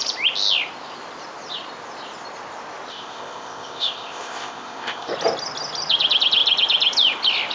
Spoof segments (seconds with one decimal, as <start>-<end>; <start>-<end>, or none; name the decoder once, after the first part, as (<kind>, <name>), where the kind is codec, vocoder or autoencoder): 2.9-5.1 (codec, ZipCodec)